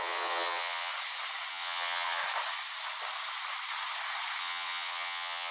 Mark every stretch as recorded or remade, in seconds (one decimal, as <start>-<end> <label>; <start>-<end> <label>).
0.0-0.9 remade; 0.9-1.5 recorded; 1.5-2.2 remade; 2.2-4.4 recorded; 4.4-5.5 remade

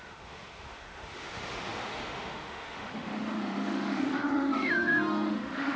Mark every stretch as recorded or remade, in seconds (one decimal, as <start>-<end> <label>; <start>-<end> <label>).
0.0-5.8 remade

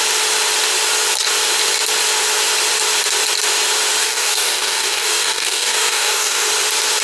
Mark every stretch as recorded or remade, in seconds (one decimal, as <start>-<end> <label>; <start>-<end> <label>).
0.0-4.0 recorded; 4.0-6.5 remade; 6.5-7.0 recorded

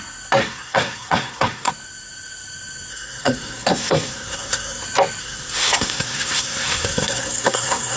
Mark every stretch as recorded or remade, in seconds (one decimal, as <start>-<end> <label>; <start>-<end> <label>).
0.0-0.4 recorded; 0.4-1.7 remade; 1.7-2.9 recorded; 2.9-4.8 remade; 4.8-5.2 recorded; 5.2-8.0 remade

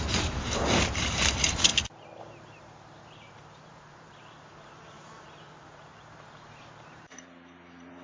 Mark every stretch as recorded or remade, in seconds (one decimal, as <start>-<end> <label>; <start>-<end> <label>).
0.0-1.7 remade; 1.7-2.2 recorded; 2.2-8.0 remade

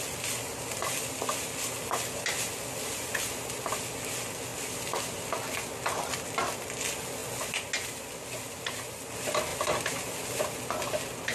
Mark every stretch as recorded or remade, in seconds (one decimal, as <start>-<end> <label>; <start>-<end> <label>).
0.0-11.3 recorded

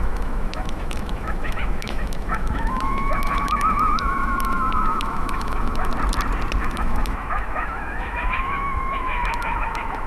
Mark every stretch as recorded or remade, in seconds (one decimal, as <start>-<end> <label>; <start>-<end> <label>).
0.0-5.9 remade; 5.9-6.6 recorded; 6.6-10.1 remade